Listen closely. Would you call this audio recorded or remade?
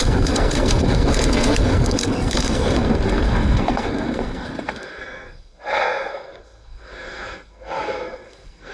remade